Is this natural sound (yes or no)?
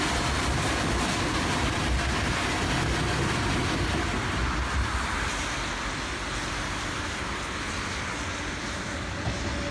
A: yes